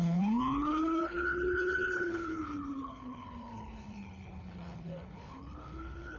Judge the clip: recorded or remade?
remade